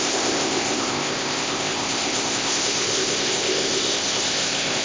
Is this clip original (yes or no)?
no